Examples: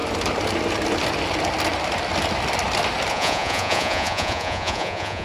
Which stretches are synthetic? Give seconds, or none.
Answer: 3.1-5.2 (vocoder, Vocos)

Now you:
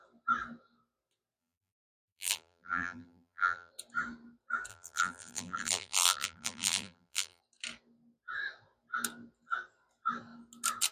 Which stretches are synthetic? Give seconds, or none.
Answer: 1.4-3.7 (vocoder, BigVGAN v2); 4.7-7.4

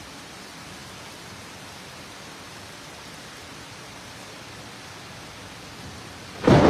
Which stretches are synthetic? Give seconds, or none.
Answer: 0.8-1.8 (vocoder, BigVGAN v2)

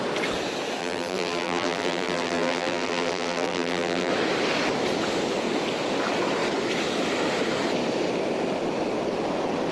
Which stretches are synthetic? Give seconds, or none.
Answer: 0.8-4.1 (vocoder, BigVGAN v2)

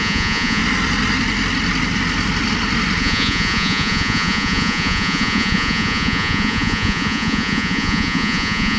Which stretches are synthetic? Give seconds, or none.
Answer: 0.0-0.6 (vocoder, Vocos); 3.0-8.8